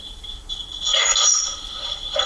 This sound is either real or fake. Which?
fake